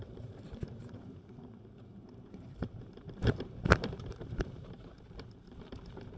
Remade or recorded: remade